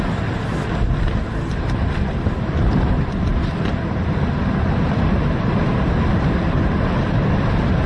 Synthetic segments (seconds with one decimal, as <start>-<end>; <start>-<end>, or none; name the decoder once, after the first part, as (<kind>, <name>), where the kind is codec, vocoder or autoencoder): none